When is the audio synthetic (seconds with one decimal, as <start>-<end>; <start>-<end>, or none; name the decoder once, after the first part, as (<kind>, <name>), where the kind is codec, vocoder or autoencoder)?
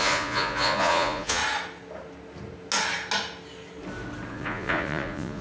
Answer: 0.0-1.4 (vocoder, Vocos); 4.3-5.4